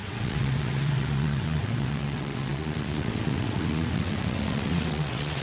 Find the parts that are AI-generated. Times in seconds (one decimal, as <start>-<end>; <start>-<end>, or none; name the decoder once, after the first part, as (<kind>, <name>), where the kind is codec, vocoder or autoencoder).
0.0-5.4 (vocoder, WaveNeXt)